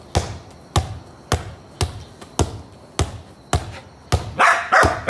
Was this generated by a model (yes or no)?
no